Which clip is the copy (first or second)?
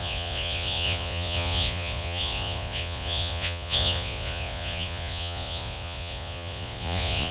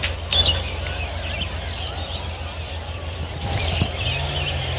first